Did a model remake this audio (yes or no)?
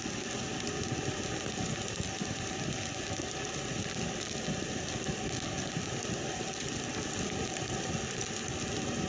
no